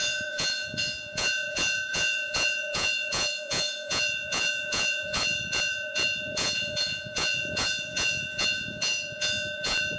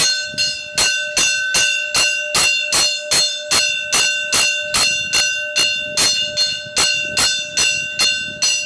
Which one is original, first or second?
second